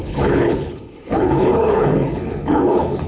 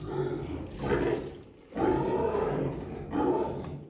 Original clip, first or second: second